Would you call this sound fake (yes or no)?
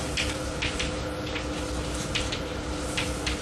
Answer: no